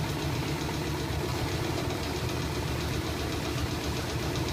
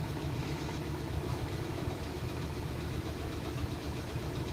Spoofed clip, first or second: second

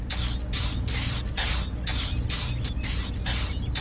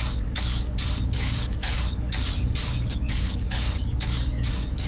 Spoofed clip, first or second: second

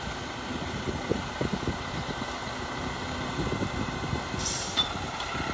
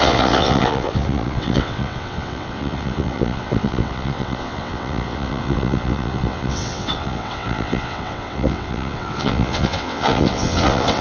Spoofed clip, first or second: second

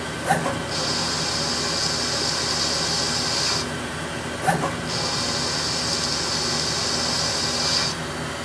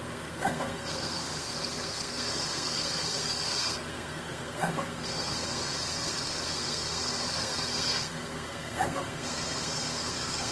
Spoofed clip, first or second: second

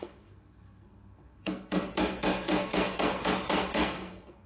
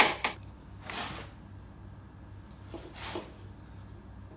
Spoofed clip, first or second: first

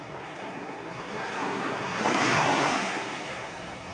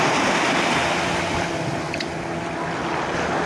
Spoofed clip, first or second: first